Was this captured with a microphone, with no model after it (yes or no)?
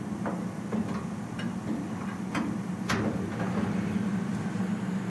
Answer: yes